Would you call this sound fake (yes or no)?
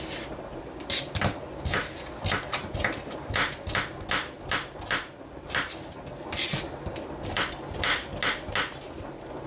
no